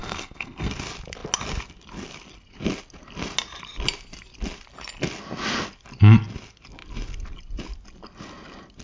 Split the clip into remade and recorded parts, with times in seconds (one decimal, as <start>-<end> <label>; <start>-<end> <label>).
0.0-0.7 remade; 0.7-8.8 recorded